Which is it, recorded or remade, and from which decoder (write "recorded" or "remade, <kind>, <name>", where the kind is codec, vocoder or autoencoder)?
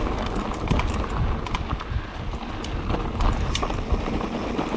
recorded